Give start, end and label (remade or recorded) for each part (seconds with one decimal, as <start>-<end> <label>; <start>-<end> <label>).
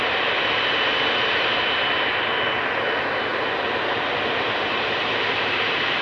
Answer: 0.0-6.0 recorded